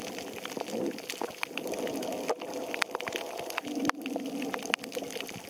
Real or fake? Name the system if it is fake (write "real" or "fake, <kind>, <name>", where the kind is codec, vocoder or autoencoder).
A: real